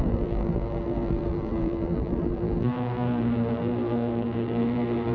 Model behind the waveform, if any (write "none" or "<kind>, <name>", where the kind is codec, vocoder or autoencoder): vocoder, BigVGAN v2